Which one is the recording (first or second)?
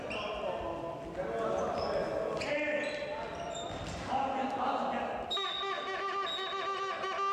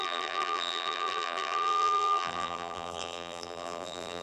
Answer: first